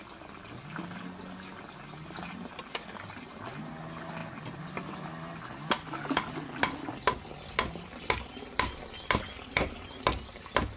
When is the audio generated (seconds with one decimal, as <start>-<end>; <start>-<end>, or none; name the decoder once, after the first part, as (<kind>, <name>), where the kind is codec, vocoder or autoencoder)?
none